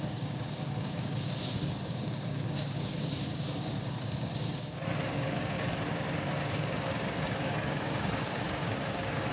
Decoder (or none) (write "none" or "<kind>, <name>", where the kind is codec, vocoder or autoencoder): codec, DAC